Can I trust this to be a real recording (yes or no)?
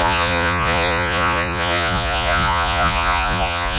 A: no